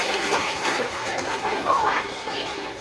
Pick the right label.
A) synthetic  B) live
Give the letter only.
A